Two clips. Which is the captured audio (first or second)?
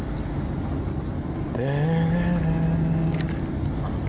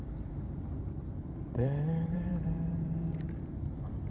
first